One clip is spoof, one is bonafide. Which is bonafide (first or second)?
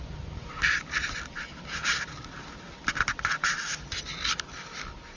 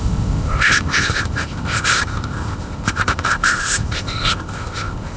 first